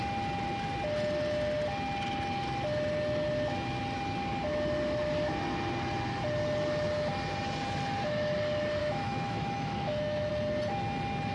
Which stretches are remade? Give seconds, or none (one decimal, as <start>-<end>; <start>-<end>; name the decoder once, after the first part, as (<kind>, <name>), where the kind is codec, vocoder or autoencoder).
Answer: 8.8-10.3 (autoencoder, DAC-VAE)